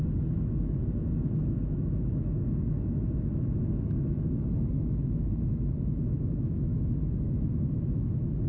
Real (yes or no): no